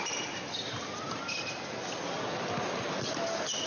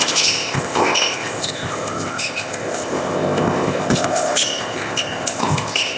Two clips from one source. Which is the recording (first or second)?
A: first